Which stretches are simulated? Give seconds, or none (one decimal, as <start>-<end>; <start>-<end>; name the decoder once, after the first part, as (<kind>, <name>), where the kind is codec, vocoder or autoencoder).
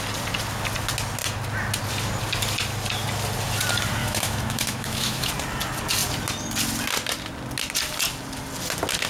4.0-5.3 (autoencoder, DAC-VAE)